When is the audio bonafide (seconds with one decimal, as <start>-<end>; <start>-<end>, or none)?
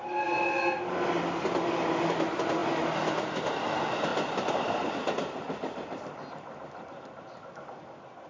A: 0.0-8.3